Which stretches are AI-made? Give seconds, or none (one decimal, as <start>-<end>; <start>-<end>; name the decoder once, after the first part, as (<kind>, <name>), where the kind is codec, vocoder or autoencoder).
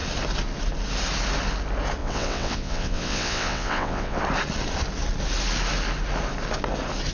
2.0-4.2 (vocoder, WaveNeXt)